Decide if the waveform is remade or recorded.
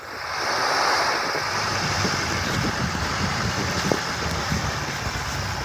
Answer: recorded